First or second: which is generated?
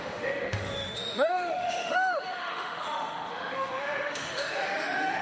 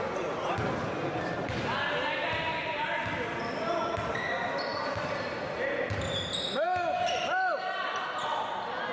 first